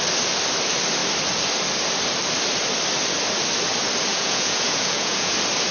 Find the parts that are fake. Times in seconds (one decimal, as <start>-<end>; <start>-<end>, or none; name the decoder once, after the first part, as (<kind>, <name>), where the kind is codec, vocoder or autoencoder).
4.1-5.3 (vocoder, Vocos)

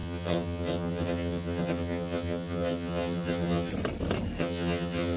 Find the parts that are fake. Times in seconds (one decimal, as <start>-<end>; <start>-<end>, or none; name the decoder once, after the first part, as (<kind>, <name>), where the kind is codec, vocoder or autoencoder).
0.0-3.7 (vocoder, HiFi-GAN); 4.4-5.2

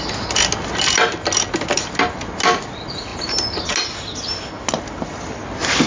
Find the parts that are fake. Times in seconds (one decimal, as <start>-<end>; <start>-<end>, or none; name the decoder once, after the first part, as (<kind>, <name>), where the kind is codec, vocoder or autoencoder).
none

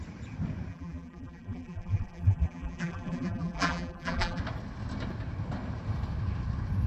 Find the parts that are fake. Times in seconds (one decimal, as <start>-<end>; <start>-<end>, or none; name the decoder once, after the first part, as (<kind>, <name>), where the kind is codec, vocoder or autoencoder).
0.7-4.4 (vocoder, BigVGAN v2)